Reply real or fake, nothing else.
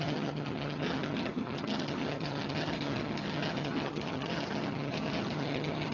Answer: fake